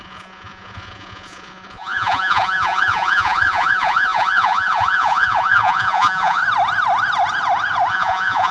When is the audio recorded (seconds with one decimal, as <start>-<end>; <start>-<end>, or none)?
6.4-7.9